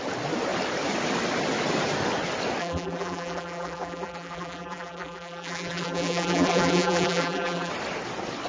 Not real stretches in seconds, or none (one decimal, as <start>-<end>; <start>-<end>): 2.6-7.7